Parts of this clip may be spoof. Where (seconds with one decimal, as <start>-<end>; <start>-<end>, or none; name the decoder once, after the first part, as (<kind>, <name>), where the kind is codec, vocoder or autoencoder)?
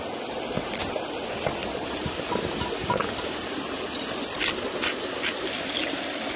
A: none